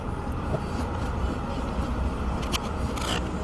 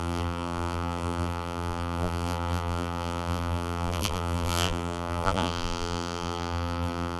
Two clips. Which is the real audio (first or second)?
first